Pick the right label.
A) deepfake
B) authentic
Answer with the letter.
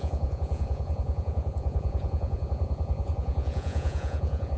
A